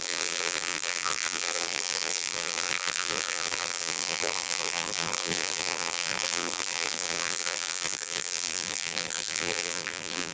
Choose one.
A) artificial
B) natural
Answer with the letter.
A